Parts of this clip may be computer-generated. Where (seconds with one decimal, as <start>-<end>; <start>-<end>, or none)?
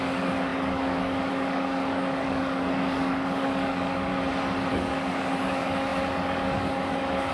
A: 0.0-4.1; 4.7-7.3